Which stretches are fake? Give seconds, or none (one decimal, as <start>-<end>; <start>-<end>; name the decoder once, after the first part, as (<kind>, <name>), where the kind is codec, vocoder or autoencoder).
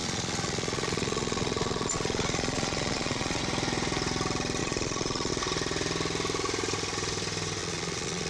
0.0-3.4 (vocoder, Vocos); 4.6-5.3; 7.6-8.3